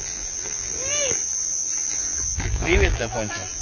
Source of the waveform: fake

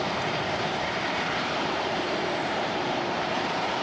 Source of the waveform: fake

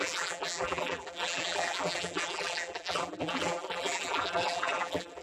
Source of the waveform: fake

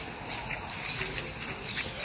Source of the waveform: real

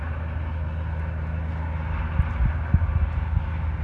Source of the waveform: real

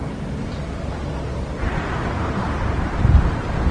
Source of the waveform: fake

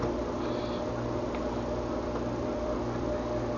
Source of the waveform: real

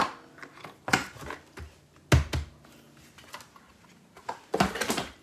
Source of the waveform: real